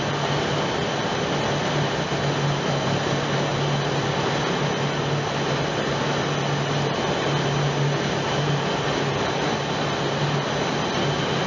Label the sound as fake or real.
real